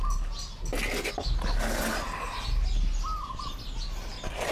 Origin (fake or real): real